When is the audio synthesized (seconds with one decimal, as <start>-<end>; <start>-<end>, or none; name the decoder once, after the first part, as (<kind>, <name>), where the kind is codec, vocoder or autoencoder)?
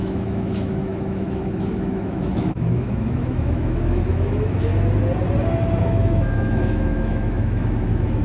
0.0-4.7 (autoencoder, DAC-VAE); 5.8-8.2